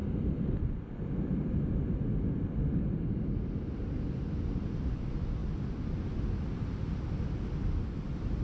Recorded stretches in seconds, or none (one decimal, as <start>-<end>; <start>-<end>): 0.0-8.4